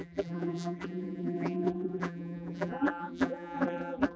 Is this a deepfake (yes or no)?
yes